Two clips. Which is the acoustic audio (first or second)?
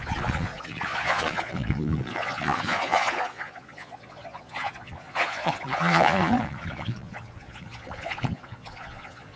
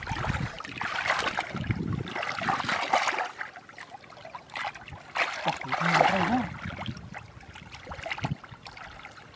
second